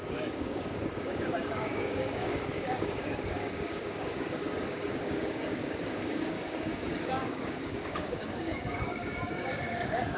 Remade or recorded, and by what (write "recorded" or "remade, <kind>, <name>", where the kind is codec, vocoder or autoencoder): remade, codec, DAC